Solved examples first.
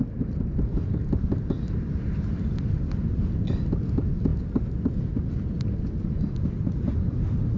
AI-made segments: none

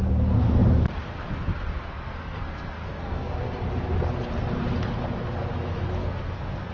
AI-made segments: 1.9-3.3 (codec, SNAC); 6.0-6.7

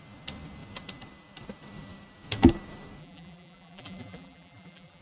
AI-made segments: 3.0-5.0 (vocoder, BigVGAN v2)

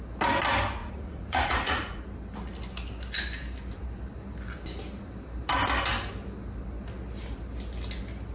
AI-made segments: 0.8-2.0 (vocoder, Vocos)

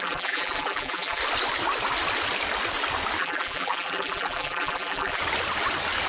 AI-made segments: 0.0-1.2 (vocoder, BigVGAN v2); 3.2-5.2

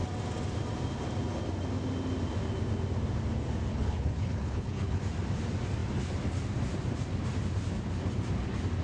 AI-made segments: 3.7-5.0 (codec, HILCodec)

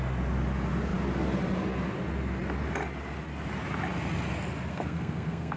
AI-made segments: 4.7-5.6 (codec, SNAC)

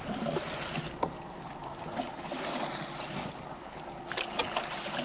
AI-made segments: none